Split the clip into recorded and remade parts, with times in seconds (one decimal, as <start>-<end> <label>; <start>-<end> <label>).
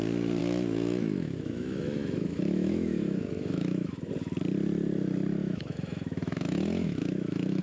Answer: 0.0-0.4 recorded; 0.4-4.1 remade; 4.1-5.4 recorded; 5.4-7.6 remade